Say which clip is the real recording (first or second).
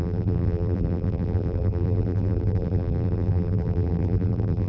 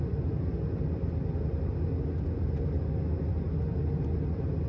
second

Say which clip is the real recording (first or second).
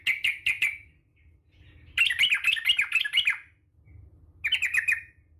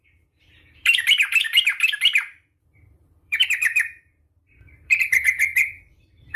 first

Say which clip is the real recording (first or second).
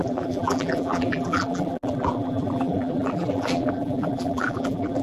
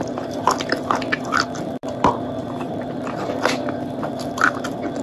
second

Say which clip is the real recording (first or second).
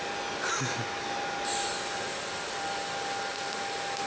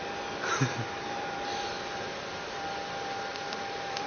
first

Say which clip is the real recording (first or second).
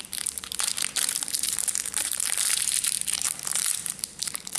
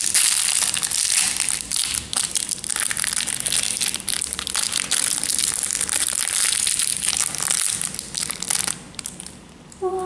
second